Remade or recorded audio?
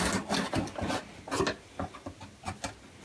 recorded